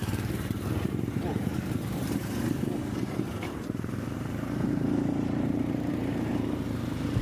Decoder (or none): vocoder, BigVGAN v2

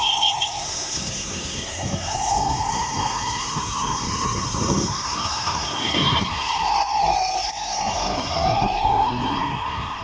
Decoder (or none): codec, SNAC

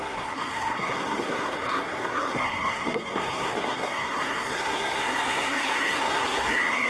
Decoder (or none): codec, SNAC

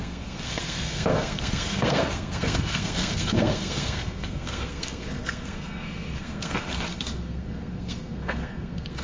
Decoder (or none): codec, SNAC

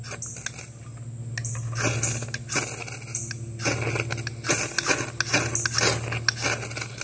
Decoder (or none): none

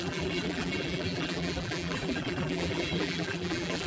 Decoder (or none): vocoder, BigVGAN v2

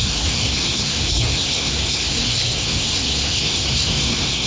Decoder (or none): codec, SNAC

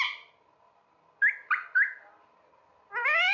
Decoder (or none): none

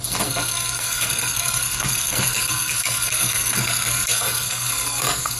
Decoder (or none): codec, SNAC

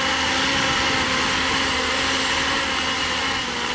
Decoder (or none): none